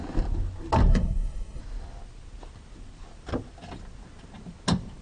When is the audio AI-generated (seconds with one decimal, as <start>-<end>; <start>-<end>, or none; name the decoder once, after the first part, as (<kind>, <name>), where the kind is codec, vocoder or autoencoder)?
0.9-1.6 (codec, SNAC)